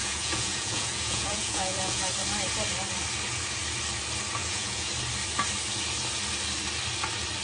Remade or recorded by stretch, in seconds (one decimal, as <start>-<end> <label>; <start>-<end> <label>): 0.0-2.1 remade; 2.1-4.4 recorded; 4.4-4.9 remade; 4.9-7.4 recorded